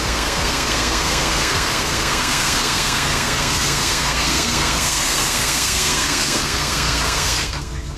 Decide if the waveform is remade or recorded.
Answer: remade